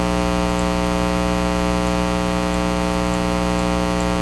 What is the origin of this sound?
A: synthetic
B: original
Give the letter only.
B